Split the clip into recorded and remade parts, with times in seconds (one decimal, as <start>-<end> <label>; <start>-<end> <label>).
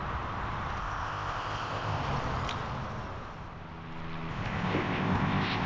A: 0.0-0.8 recorded; 0.8-2.0 remade; 2.0-4.3 recorded; 4.3-5.7 remade